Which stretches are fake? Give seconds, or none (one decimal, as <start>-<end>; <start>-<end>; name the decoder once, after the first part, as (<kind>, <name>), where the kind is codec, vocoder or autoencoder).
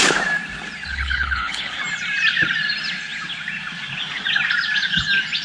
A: 0.9-1.8 (codec, HILCodec)